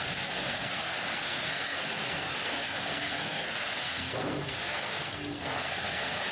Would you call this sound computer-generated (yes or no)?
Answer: yes